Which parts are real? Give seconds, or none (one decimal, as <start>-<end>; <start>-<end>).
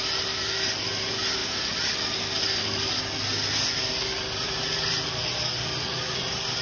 0.0-6.6